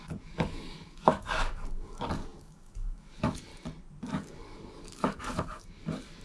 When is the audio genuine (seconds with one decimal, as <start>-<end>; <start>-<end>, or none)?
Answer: 3.5-4.1